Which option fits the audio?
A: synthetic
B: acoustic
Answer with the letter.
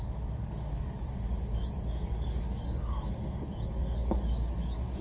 A